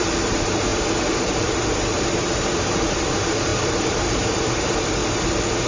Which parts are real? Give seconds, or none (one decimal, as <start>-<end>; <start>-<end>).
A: 0.7-1.2; 5.0-5.7